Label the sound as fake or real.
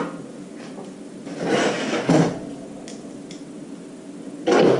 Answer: real